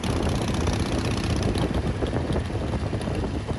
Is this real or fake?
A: real